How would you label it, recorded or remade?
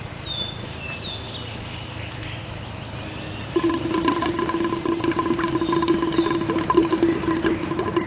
recorded